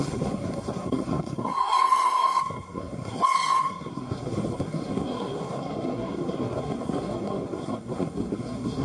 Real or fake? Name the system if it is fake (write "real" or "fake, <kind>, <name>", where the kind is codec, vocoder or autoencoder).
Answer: fake, codec, SNAC